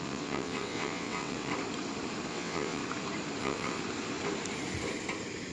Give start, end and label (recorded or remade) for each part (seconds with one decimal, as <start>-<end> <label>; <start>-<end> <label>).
0.0-1.5 remade; 1.5-2.3 recorded; 2.3-2.8 remade; 2.8-3.4 recorded; 3.4-3.8 remade; 3.8-5.5 recorded